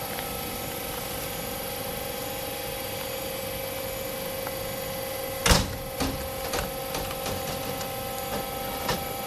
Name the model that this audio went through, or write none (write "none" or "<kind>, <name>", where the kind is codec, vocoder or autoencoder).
none